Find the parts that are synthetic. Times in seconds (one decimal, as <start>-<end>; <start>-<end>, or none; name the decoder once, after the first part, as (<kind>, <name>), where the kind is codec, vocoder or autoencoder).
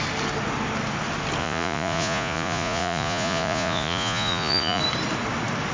1.4-4.8 (vocoder, Vocos)